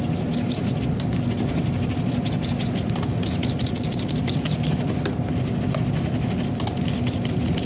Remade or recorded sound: recorded